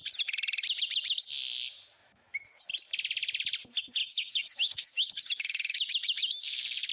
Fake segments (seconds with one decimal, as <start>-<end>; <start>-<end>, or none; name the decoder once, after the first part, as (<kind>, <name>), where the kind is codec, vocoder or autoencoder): 2.0-2.7 (autoencoder, DAC-VAE); 4.0-6.9